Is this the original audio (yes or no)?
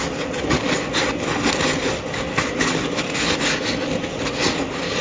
yes